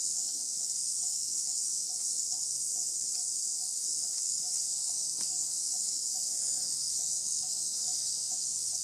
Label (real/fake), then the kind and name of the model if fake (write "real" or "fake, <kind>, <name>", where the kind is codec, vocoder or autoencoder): fake, codec, SNAC